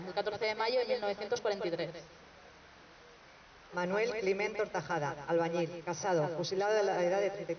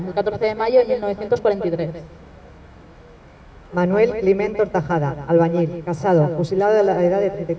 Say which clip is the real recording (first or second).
first